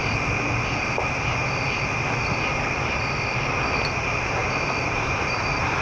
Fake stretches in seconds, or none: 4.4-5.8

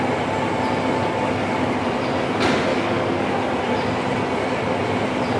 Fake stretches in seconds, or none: 1.0-1.6; 2.7-3.3

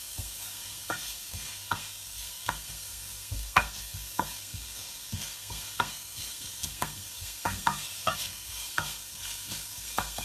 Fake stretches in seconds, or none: 0.0-10.2

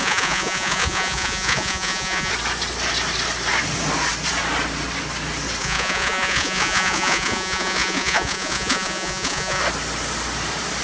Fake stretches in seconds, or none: 0.0-2.3; 5.6-9.6

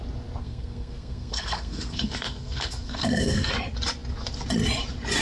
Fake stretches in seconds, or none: 0.4-3.5

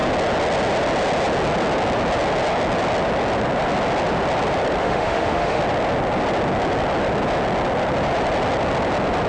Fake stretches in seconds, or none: 4.8-5.6

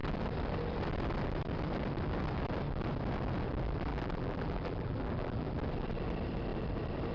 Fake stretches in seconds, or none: 3.9-5.5